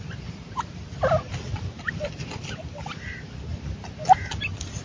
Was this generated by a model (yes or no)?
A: no